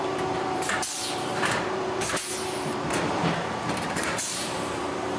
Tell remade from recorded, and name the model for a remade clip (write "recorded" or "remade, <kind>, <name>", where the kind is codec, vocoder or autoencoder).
remade, vocoder, BigVGAN v2